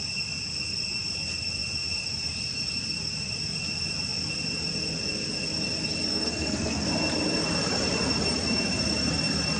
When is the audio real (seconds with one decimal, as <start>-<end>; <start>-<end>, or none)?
0.0-6.1; 6.9-9.6